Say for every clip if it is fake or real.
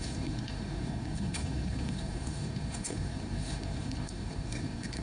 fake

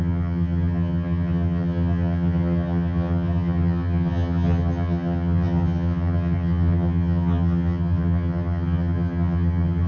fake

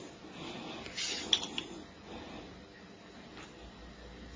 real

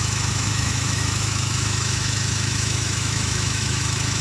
fake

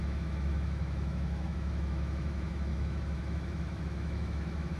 fake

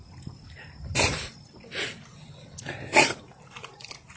real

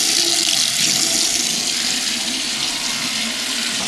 real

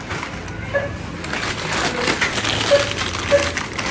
real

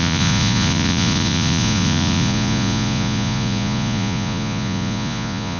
fake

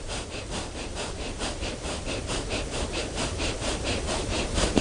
fake